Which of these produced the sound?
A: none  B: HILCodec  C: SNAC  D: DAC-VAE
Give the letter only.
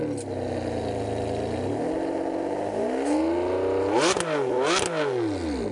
A